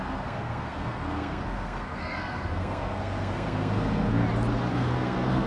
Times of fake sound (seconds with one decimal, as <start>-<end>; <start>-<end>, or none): 0.0-4.2; 4.7-5.5